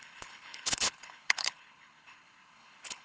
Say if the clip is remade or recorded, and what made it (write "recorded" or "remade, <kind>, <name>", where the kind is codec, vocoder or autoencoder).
remade, codec, HILCodec